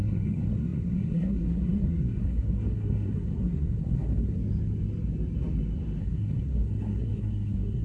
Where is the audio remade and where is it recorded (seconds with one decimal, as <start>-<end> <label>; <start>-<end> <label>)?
0.0-4.4 remade; 4.4-6.0 recorded; 6.0-7.8 remade